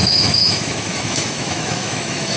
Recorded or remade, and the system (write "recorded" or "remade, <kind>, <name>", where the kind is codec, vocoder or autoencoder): remade, autoencoder, DAC-VAE